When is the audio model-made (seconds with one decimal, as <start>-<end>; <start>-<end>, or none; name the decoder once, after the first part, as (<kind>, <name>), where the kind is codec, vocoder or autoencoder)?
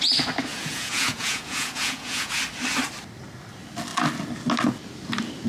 0.5-2.4 (vocoder, Vocos)